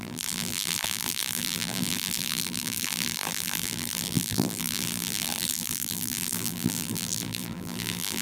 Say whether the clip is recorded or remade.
remade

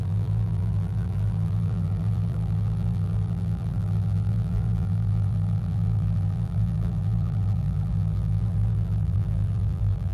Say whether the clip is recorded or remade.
remade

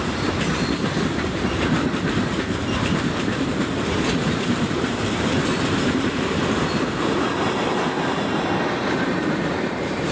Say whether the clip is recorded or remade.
remade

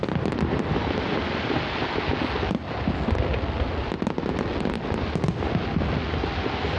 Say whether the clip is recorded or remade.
recorded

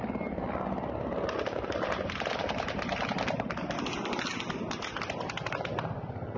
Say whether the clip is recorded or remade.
recorded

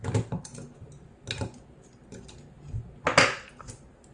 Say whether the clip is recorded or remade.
recorded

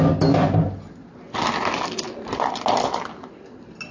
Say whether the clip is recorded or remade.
recorded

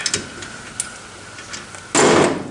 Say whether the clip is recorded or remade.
recorded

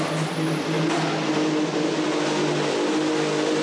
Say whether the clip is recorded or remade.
recorded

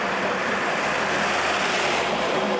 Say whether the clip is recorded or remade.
remade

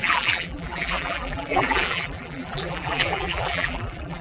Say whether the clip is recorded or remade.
remade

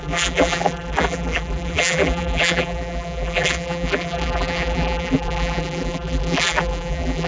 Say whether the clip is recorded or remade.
remade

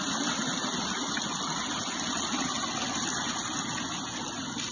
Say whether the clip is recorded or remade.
recorded